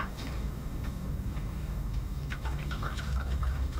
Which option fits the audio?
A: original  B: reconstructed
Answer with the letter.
B